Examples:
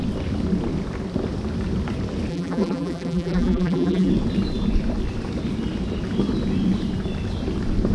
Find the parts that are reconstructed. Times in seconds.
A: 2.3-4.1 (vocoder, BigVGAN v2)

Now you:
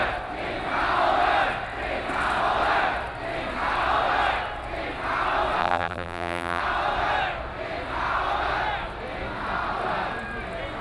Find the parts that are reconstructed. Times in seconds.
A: 5.6-6.6 (vocoder, BigVGAN v2)

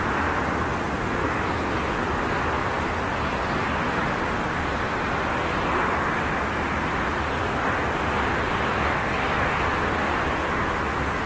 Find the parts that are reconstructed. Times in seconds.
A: 0.7-1.7 (vocoder, BigVGAN v2); 2.6-5.1

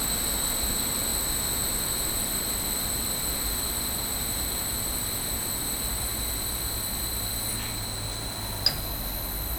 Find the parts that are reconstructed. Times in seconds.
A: none

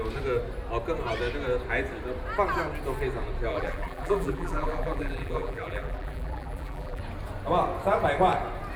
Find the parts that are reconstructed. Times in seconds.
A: 3.5-7.0 (vocoder, BigVGAN v2)

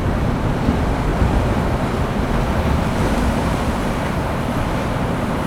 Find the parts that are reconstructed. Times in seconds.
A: none

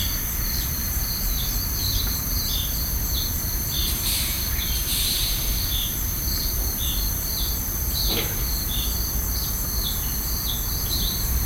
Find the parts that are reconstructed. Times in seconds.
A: 0.0-8.1 (vocoder, BigVGAN v2); 10.8-11.5

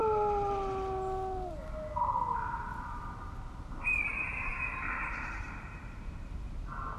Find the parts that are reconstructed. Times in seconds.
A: 2.9-4.5 (vocoder, BigVGAN v2); 5.1-7.0